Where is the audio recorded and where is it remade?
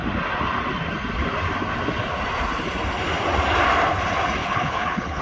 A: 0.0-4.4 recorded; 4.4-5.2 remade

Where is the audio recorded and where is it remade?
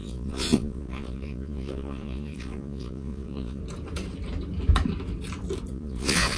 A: 0.0-3.6 remade; 3.6-5.7 recorded; 5.7-6.4 remade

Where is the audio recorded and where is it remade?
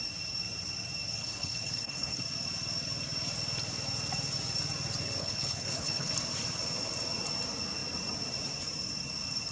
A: 0.0-1.2 recorded; 1.2-2.2 remade; 2.2-5.2 recorded; 5.2-6.1 remade; 6.1-9.5 recorded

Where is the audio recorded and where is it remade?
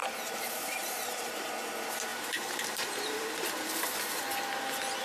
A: 0.0-1.5 remade; 1.5-2.1 recorded; 2.1-4.2 remade; 4.2-5.0 recorded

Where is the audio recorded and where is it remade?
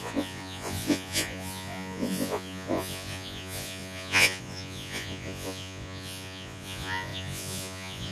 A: 0.0-8.1 remade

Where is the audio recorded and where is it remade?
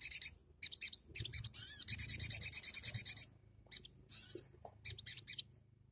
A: 0.0-5.9 recorded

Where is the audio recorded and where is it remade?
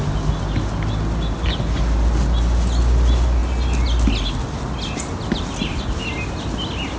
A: 0.0-7.0 recorded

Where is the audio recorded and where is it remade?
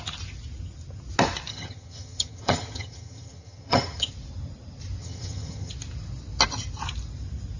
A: 0.0-1.5 recorded; 1.5-4.1 remade; 4.1-5.0 recorded; 5.0-5.7 remade; 5.7-7.6 recorded